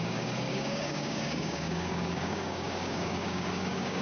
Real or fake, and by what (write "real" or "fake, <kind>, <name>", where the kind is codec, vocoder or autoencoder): fake, codec, DAC